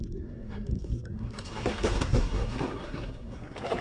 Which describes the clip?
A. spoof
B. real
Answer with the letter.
A